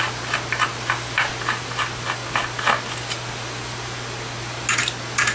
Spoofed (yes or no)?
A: no